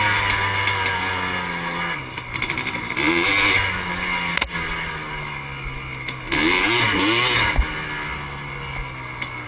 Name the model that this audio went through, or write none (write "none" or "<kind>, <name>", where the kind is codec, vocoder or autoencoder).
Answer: none